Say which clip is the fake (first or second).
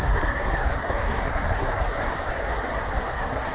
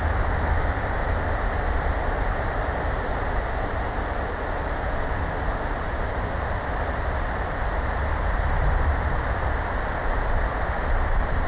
first